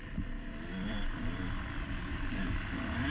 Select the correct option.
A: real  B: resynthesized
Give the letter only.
B